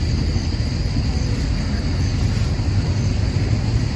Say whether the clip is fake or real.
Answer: real